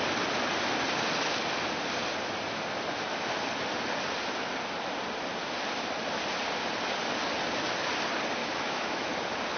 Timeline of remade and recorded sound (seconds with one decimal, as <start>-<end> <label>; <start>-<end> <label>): 0.0-8.4 recorded; 8.4-9.1 remade; 9.1-9.6 recorded